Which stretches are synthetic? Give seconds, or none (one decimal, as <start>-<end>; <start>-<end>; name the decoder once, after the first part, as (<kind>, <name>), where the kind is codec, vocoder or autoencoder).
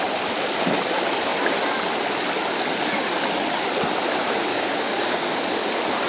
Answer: 4.5-5.3 (codec, DAC)